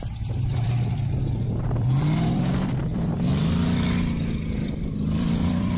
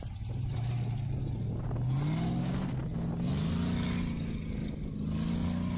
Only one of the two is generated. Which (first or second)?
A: first